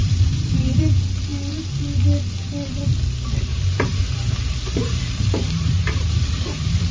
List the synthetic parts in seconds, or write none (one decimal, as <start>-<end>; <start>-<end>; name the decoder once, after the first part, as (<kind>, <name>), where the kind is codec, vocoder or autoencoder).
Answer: 0.0-0.9 (vocoder, BigVGAN v2); 3.5-6.9